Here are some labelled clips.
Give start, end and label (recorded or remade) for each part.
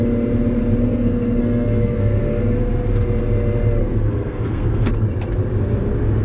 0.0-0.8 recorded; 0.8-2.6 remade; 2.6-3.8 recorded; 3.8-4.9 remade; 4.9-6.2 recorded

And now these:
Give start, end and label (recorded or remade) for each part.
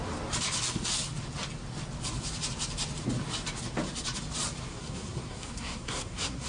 0.0-4.7 recorded; 4.7-6.5 remade